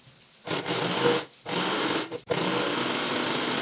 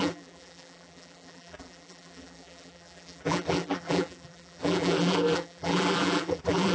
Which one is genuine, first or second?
first